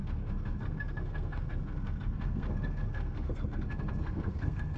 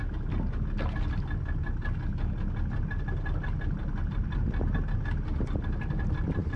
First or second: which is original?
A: second